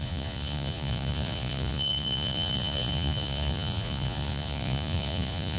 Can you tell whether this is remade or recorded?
remade